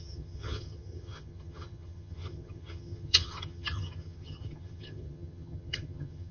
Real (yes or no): no